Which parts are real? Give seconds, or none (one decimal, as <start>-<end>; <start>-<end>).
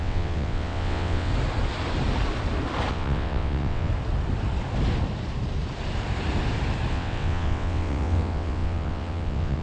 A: 1.3-2.9; 3.9-6.9